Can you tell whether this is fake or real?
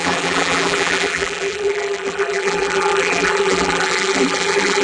fake